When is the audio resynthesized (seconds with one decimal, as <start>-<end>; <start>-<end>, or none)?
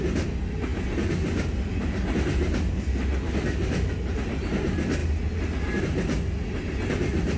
none